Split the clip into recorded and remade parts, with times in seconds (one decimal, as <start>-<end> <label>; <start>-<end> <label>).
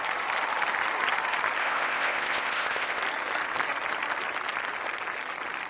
0.0-1.6 recorded; 1.6-3.0 remade; 3.0-5.7 recorded